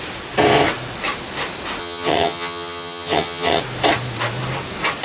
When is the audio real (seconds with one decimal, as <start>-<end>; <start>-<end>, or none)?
0.0-1.8; 3.6-5.0